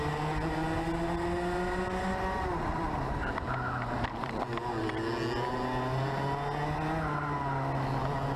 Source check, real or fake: real